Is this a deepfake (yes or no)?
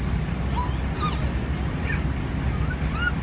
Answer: no